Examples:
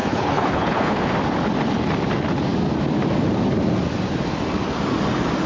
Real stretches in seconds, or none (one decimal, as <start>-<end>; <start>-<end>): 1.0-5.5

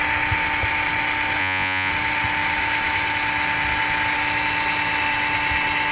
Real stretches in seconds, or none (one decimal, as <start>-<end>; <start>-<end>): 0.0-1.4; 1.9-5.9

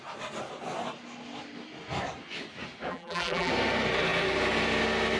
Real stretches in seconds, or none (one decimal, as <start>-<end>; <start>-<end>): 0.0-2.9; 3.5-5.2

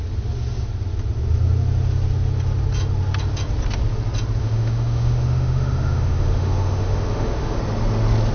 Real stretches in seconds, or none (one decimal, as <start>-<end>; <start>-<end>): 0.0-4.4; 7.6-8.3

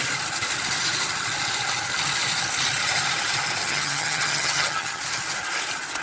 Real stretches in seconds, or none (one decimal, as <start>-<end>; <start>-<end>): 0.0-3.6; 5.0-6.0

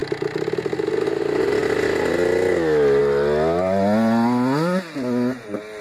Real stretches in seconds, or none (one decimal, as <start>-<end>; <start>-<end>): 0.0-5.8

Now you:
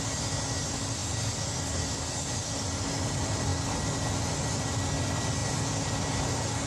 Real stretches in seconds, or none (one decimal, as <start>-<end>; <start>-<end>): 0.0-5.4; 6.2-6.7